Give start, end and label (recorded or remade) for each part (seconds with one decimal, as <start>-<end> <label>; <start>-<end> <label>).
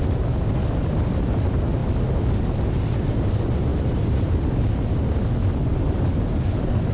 0.0-3.7 recorded; 3.7-4.6 remade; 4.6-6.9 recorded